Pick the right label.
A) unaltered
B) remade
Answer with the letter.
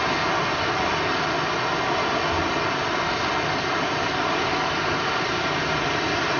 A